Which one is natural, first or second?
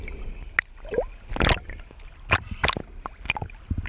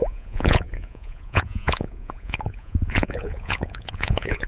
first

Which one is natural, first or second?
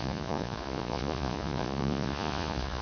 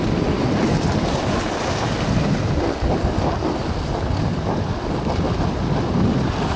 second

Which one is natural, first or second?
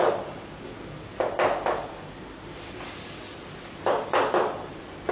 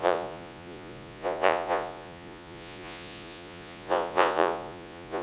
first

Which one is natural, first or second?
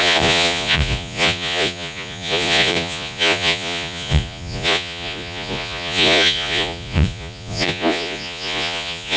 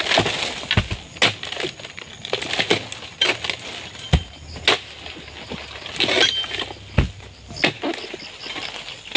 second